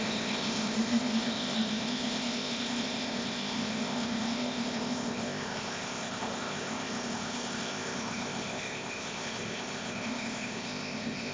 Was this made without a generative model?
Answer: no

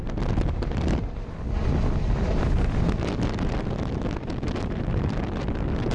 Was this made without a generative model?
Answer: yes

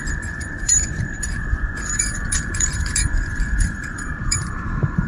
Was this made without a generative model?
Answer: no